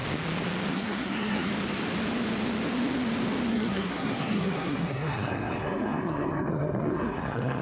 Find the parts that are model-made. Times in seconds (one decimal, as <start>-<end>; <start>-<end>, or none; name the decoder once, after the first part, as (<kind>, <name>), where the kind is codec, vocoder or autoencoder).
0.7-1.5 (codec, SNAC); 3.5-7.6